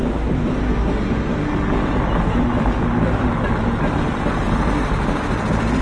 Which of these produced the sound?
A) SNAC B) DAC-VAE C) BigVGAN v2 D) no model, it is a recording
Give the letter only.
D